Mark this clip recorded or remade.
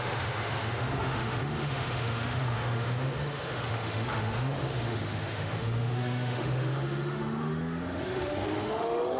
remade